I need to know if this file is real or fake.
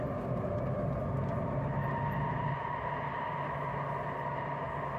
real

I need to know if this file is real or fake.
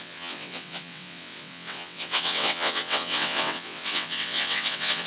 fake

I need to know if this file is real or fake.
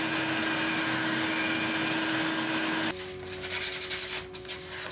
real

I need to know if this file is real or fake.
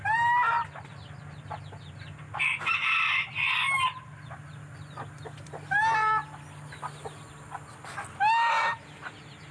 real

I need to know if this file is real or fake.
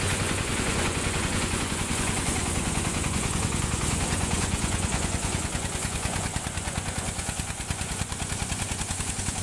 fake